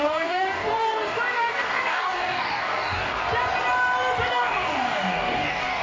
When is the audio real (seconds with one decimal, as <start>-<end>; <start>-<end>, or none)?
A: 3.2-4.3